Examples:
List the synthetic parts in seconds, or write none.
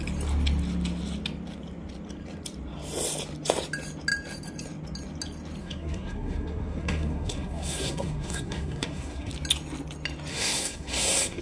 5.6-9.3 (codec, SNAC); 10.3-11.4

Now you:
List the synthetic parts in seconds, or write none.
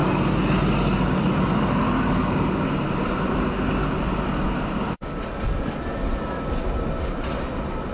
none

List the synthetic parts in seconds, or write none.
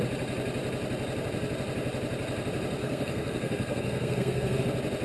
2.8-4.6 (codec, SNAC)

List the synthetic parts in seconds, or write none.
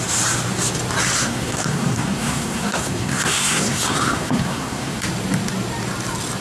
1.2-5.0 (codec, SNAC)